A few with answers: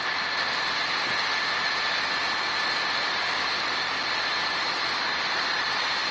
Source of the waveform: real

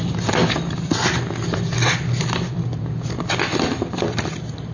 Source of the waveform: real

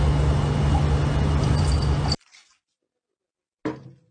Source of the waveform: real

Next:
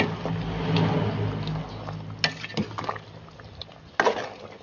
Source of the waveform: real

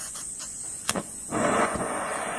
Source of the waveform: fake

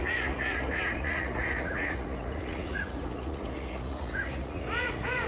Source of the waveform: fake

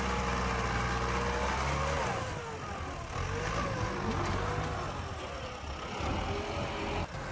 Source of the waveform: real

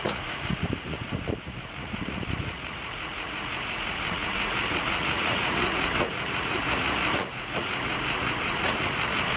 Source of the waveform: fake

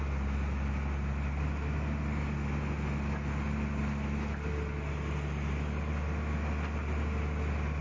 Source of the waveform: real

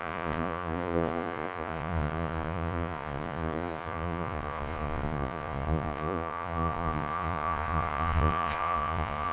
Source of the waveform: fake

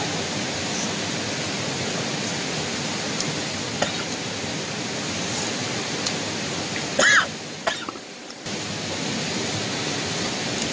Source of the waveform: real